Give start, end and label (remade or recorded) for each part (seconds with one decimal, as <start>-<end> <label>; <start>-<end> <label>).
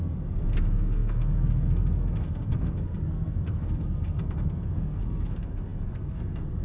0.0-6.6 remade